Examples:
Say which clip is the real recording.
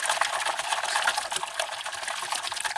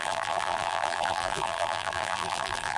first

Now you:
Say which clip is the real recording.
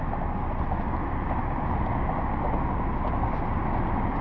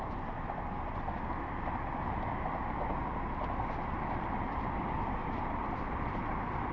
first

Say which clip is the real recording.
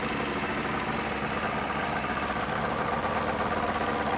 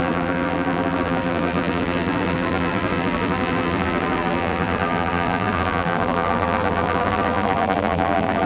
first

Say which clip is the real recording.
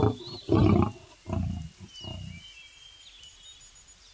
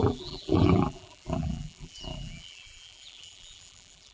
first